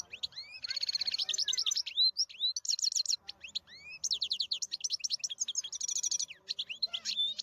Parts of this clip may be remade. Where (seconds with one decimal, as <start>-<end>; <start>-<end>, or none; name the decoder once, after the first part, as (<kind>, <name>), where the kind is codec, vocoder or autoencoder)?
0.0-2.2 (vocoder, BigVGAN v2); 6.6-7.4